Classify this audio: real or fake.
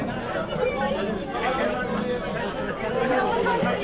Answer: real